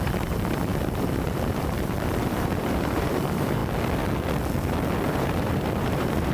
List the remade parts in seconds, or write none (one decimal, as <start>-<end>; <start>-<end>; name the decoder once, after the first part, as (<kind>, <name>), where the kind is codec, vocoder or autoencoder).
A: 0.0-3.6 (vocoder, BigVGAN v2); 5.1-6.3